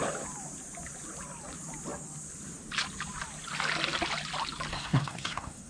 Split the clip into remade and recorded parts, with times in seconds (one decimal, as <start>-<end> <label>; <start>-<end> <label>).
0.0-4.7 recorded; 4.7-5.7 remade